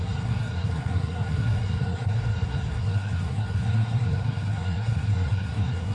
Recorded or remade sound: remade